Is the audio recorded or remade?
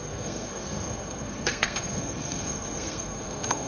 remade